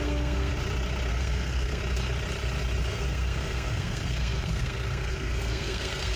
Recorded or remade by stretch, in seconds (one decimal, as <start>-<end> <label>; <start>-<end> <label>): 0.0-0.5 remade; 0.5-1.1 recorded; 1.1-1.8 remade; 1.8-2.9 recorded; 2.9-6.2 remade